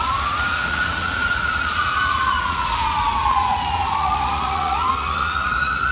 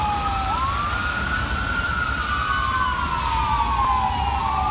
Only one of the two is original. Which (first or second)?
second